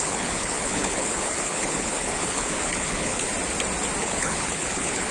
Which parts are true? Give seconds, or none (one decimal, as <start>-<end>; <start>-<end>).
3.3-4.0